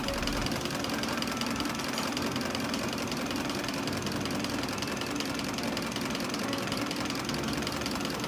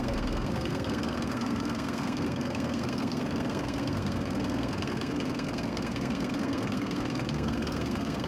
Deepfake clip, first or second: second